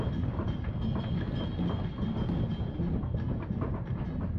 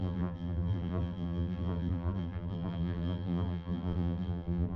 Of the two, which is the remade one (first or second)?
second